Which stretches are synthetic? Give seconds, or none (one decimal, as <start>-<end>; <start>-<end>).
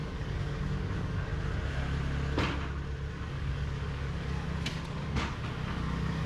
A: 0.0-1.3; 3.1-6.3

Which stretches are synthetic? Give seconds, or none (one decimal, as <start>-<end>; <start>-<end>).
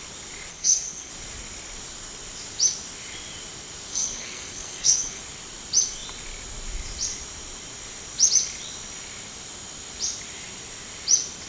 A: 0.5-1.1; 3.9-5.2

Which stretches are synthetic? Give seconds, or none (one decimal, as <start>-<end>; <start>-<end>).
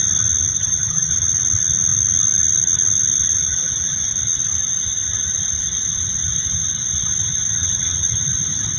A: 0.5-1.1; 7.6-8.2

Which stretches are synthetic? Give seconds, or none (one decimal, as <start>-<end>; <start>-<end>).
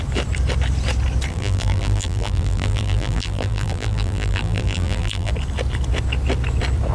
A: 1.3-5.3